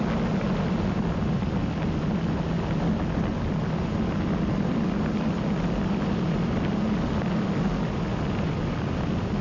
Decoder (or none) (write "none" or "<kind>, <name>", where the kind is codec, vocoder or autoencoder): none